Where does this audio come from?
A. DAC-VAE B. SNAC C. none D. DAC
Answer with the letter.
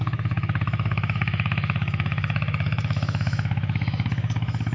A